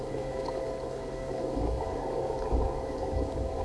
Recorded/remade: remade